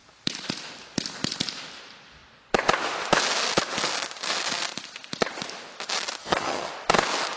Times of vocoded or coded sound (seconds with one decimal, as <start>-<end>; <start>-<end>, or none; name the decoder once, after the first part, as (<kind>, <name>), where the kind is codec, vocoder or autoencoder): 6.2-6.7 (vocoder, HiFi-GAN)